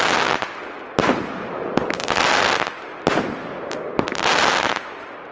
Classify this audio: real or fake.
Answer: real